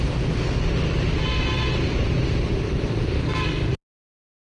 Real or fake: real